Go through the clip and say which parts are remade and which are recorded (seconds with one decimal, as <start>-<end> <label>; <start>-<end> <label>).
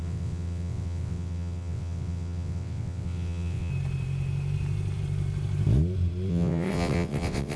0.0-3.7 remade; 3.7-6.3 recorded; 6.3-7.6 remade